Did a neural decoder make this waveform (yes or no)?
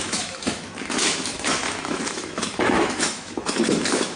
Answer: yes